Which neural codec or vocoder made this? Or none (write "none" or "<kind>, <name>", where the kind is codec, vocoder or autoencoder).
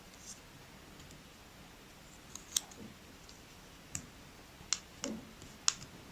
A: none